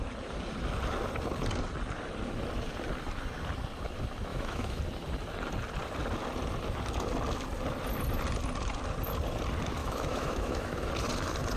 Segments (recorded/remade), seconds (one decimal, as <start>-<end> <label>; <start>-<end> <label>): 0.0-4.3 recorded; 4.3-4.8 remade; 4.8-9.8 recorded; 9.8-10.9 remade; 10.9-11.6 recorded